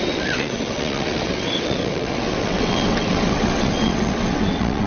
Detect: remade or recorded remade